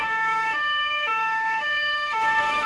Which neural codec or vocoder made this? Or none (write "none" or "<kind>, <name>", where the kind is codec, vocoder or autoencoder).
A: autoencoder, DAC-VAE